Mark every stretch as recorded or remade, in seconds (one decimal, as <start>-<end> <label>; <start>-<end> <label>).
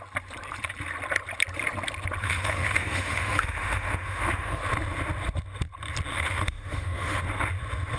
0.0-2.2 recorded; 2.2-4.6 remade; 4.6-6.1 recorded; 6.1-7.2 remade; 7.2-8.0 recorded